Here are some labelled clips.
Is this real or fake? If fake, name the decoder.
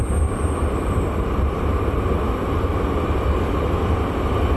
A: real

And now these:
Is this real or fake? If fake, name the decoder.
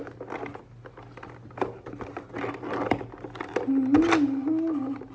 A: real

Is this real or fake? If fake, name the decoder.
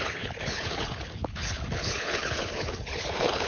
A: fake, codec, HILCodec